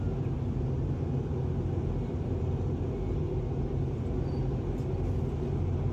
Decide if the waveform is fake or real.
real